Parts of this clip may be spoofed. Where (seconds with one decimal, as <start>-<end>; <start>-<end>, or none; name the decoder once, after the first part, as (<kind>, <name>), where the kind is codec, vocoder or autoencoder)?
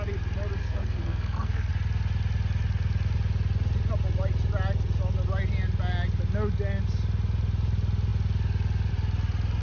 0.6-1.7 (codec, SNAC)